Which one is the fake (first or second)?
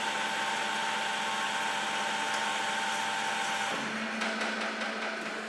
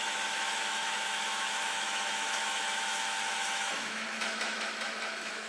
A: second